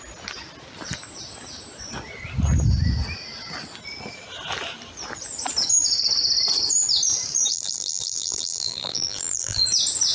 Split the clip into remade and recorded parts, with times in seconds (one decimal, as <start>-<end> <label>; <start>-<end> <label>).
0.0-7.5 recorded; 7.5-9.6 remade; 9.6-10.1 recorded